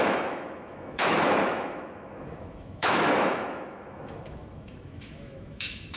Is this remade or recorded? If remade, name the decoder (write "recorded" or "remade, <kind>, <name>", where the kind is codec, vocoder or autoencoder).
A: remade, autoencoder, DAC-VAE